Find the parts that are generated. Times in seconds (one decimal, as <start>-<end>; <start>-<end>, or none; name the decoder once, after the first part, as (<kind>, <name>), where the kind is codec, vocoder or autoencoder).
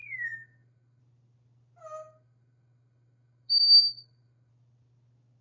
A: 0.0-1.0 (codec, DAC); 2.0-4.5